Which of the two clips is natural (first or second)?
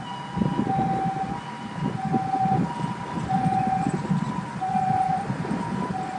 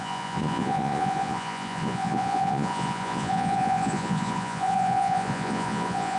first